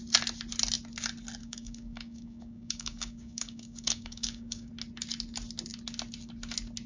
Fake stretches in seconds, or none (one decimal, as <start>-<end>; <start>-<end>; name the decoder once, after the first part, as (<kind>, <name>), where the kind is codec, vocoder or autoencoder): 1.4-4.7 (codec, DAC)